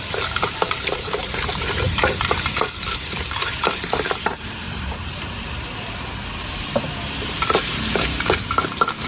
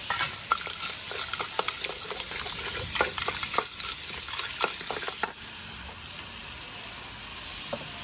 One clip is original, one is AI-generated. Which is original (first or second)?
second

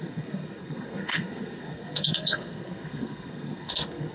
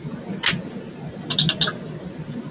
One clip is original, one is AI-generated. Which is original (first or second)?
second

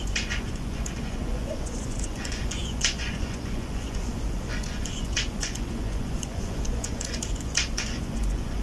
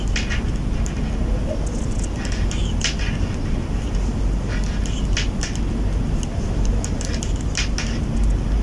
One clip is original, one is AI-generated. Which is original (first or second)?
second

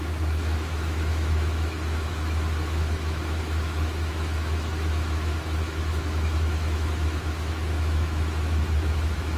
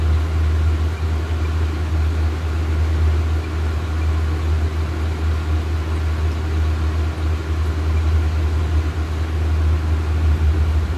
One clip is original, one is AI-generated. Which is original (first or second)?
second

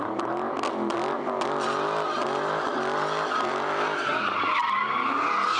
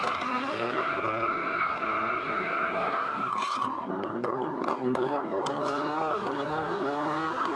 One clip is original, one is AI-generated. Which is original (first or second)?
first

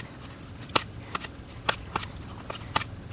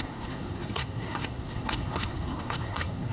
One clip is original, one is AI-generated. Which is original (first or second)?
first